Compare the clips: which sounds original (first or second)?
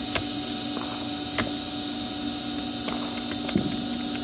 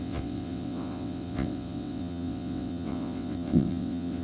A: first